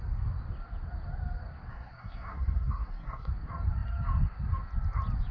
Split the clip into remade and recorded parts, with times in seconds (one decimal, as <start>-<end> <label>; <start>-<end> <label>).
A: 0.0-1.7 recorded; 1.7-3.3 remade; 3.3-5.3 recorded